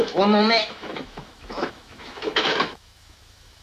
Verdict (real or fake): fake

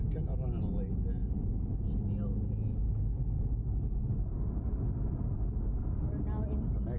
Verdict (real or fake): real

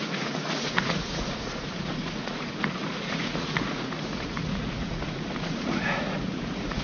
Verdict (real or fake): fake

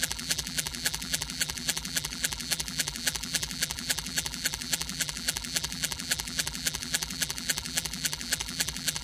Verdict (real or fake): fake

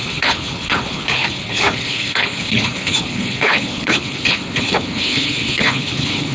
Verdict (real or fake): fake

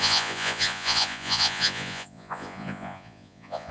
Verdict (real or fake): fake